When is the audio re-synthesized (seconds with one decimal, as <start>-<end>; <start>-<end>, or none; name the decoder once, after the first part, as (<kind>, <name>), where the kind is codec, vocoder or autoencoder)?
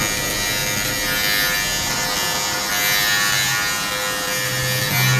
none